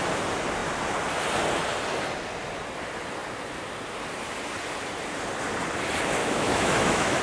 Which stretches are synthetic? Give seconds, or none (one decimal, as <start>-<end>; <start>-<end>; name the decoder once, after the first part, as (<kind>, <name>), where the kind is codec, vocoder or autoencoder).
6.2-7.2 (autoencoder, DAC-VAE)